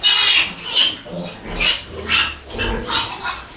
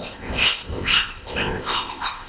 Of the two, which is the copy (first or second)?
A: second